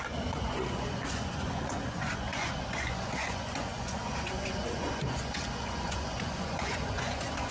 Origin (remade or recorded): remade